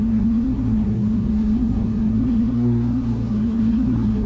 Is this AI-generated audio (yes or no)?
yes